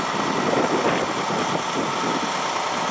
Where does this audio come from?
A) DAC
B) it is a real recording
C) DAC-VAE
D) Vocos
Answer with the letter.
B